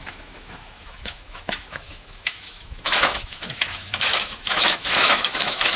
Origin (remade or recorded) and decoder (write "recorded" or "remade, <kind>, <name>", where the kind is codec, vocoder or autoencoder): remade, autoencoder, DAC-VAE